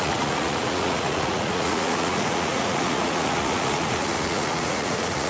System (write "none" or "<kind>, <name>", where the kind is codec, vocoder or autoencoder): vocoder, Vocos